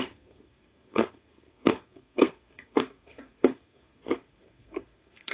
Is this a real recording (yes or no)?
no